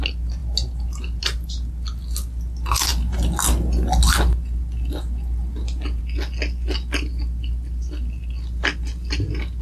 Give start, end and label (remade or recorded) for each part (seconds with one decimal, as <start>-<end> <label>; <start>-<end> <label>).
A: 0.0-9.6 recorded